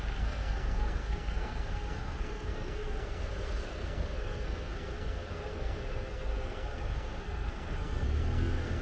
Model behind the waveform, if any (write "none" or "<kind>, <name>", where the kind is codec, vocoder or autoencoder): codec, SNAC